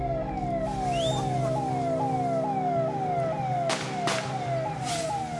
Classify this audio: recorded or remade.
recorded